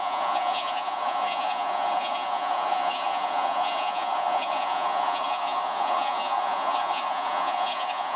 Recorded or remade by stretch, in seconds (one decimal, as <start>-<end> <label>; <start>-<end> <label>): 0.0-8.2 remade